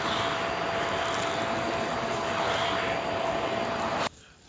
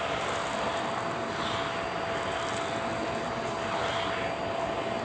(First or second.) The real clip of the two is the second